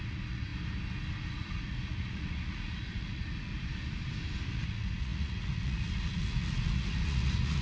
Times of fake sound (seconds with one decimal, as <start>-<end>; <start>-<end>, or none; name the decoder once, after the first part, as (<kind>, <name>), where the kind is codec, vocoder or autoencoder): 0.0-0.5 (vocoder, Vocos); 1.3-3.5; 4.5-7.6